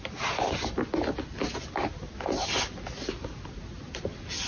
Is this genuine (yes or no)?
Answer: yes